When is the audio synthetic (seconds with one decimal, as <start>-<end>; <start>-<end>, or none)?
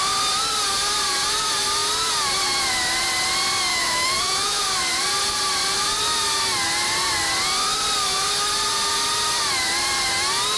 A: 3.7-4.6